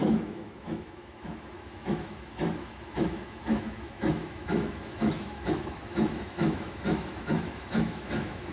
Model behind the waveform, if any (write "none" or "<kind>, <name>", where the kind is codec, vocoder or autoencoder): autoencoder, DAC-VAE